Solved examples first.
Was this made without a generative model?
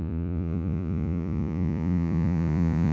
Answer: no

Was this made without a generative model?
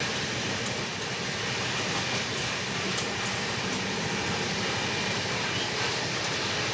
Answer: yes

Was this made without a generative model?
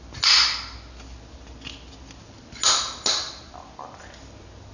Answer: yes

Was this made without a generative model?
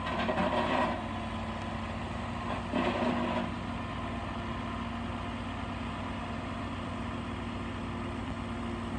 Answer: yes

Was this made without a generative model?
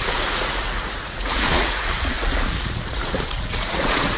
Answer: no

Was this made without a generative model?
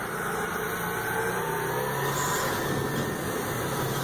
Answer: yes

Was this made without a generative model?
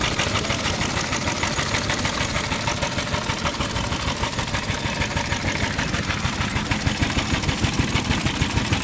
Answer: yes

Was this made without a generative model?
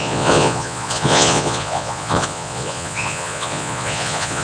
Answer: no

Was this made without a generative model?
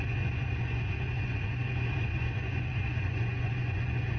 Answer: no